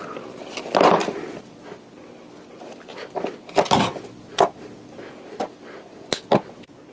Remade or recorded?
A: recorded